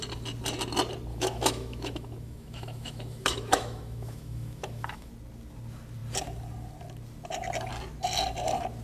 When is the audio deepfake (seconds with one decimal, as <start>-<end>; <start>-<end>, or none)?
1.1-5.1